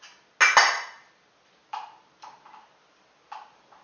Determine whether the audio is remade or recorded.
recorded